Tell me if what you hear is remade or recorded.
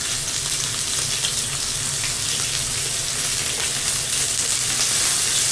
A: recorded